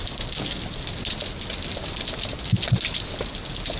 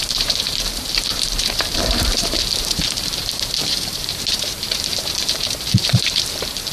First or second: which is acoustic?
first